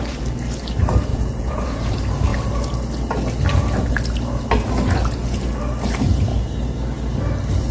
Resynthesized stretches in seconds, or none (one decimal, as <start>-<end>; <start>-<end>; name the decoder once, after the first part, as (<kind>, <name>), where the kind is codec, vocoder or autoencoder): 1.1-1.9 (vocoder, Vocos)